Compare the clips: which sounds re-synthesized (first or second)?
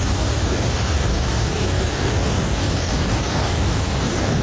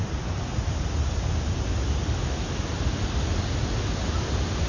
first